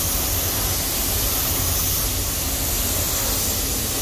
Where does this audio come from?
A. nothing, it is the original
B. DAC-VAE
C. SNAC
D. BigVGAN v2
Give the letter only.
A